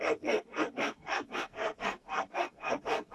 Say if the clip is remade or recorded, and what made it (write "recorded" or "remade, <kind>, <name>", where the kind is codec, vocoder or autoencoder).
remade, codec, SNAC